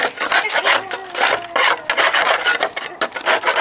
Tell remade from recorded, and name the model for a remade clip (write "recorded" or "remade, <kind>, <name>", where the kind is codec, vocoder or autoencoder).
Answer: recorded